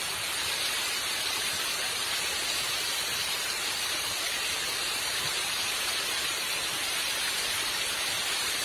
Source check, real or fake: fake